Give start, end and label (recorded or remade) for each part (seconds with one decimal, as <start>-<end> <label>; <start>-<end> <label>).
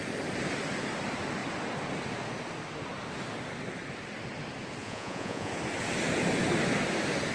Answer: 0.0-4.8 recorded; 4.8-5.5 remade; 5.5-7.3 recorded